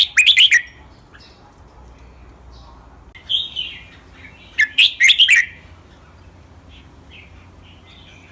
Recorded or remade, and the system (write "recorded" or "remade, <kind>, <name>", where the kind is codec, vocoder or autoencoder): recorded